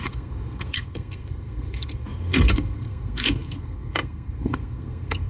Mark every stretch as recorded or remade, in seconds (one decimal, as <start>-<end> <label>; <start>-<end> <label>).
0.0-5.3 remade